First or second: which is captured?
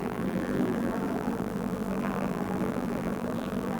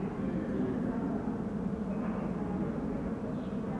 second